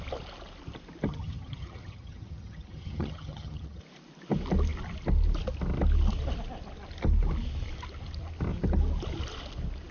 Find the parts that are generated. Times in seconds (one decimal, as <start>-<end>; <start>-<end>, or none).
1.1-3.8